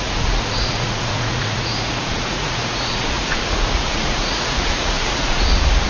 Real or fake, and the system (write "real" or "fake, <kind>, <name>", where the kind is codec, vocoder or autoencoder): fake, vocoder, Vocos